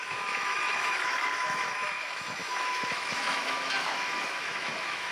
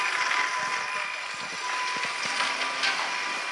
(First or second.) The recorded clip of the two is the second